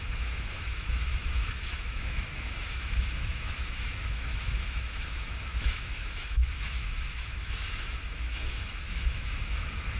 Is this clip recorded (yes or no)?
no